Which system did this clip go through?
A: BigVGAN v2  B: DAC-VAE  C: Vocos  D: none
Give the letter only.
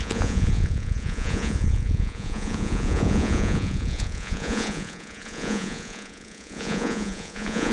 C